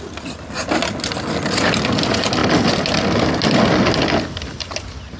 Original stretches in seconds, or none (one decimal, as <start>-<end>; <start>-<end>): 0.0-5.2

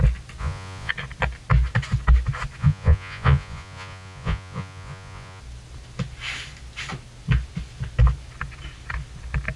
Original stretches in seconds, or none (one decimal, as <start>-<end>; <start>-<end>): 0.0-0.4; 0.9-2.6; 5.4-9.6

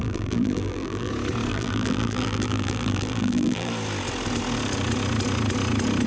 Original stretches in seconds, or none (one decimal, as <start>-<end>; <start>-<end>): 1.1-1.5; 3.7-6.1

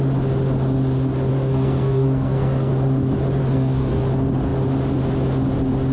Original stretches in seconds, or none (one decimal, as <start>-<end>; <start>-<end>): 0.0-1.3; 2.7-3.4; 4.0-5.9

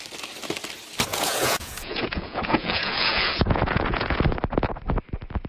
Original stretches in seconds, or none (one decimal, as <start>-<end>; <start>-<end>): 0.0-1.1; 4.2-5.5

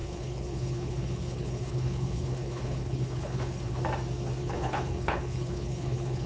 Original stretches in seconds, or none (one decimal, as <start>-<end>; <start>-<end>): 3.8-4.4